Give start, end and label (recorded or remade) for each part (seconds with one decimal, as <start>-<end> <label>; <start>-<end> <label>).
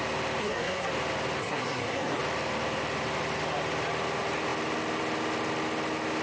0.0-0.4 recorded; 0.4-0.9 remade; 0.9-1.4 recorded; 1.4-2.2 remade; 2.2-6.2 recorded